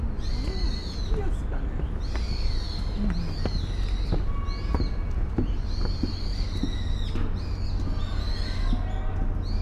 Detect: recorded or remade recorded